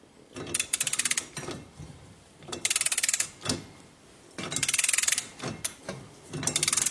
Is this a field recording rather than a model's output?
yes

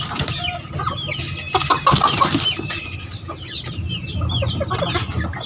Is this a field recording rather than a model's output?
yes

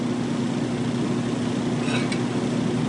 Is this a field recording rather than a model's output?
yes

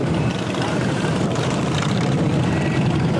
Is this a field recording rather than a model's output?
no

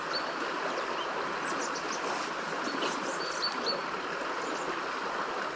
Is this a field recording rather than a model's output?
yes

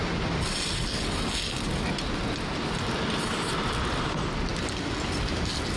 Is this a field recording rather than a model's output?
yes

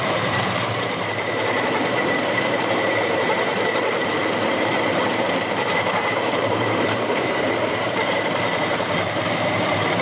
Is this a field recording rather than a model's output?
no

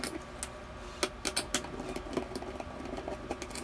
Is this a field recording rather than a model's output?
yes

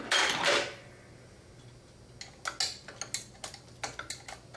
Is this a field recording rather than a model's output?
yes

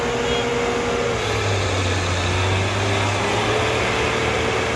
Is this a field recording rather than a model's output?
yes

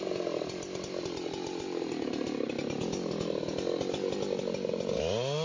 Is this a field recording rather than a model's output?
yes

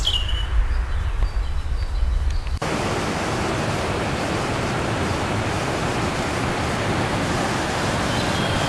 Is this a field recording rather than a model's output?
yes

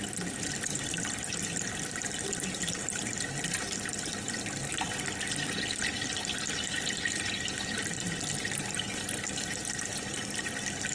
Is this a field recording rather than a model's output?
yes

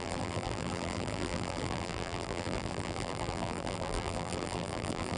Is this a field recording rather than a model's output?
no